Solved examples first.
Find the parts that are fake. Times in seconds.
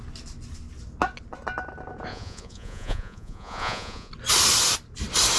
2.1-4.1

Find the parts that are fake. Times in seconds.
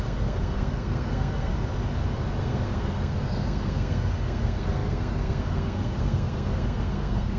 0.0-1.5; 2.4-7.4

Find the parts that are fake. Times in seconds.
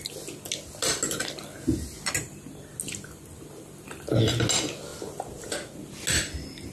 none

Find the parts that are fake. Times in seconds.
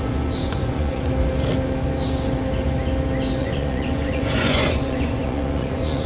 0.4-1.1; 3.4-6.1